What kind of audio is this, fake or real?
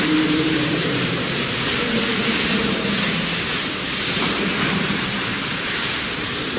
fake